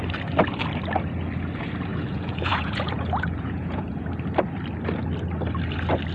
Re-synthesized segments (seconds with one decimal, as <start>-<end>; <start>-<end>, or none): 1.9-3.9

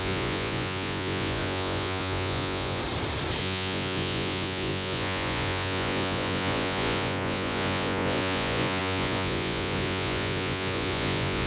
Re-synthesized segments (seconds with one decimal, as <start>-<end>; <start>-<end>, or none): 0.0-2.8; 3.4-11.5